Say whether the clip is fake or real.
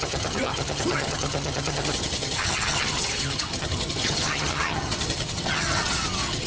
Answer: fake